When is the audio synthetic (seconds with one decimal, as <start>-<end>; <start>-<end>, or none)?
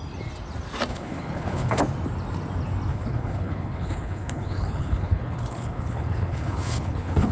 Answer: 0.9-1.8; 2.9-7.3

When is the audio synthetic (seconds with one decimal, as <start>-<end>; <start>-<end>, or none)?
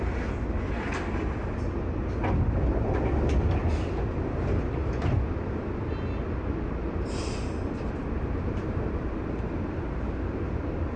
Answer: none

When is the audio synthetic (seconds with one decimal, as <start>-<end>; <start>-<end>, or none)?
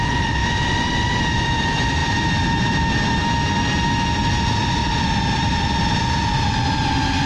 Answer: 0.0-3.1; 4.3-7.3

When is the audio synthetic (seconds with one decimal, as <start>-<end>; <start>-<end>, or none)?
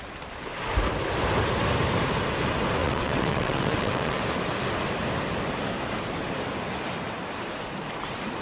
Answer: 2.8-4.2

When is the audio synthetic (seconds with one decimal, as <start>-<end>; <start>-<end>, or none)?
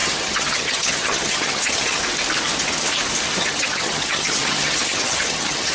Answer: 0.0-2.0; 3.4-5.7